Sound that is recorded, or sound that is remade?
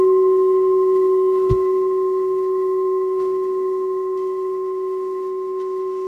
remade